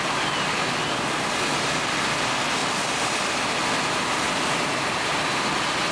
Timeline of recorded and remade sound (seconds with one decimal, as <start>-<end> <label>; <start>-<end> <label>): 0.0-5.9 recorded